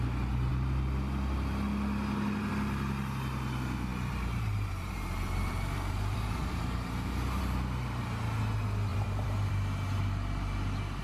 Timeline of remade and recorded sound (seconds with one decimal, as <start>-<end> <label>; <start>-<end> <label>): 0.0-3.9 recorded; 3.9-7.4 remade; 7.4-8.9 recorded; 8.9-9.5 remade; 9.5-11.0 recorded

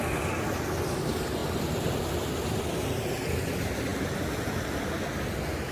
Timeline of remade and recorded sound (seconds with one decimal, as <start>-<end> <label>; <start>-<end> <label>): 0.0-5.7 recorded

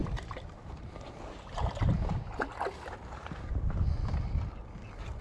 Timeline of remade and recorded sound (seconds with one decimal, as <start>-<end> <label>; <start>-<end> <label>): 0.0-1.8 remade; 1.8-2.5 recorded; 2.5-3.5 remade; 3.5-5.2 recorded